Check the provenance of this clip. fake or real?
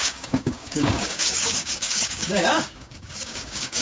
fake